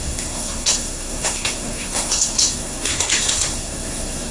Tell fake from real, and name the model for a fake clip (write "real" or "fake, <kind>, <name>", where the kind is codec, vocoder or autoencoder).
fake, codec, SNAC